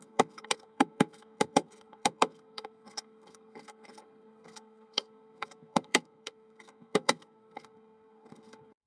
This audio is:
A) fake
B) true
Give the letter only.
A